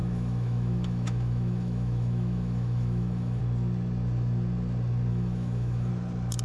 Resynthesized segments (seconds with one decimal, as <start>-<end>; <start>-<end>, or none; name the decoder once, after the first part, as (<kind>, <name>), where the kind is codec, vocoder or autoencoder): 0.0-3.4 (autoencoder, DAC-VAE); 5.1-5.9